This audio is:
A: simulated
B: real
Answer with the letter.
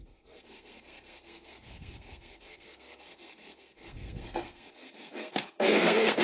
A